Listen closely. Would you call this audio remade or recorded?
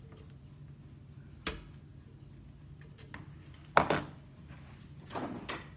recorded